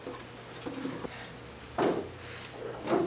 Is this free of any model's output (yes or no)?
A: yes